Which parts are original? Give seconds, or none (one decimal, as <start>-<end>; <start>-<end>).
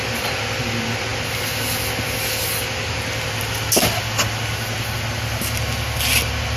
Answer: 0.0-6.6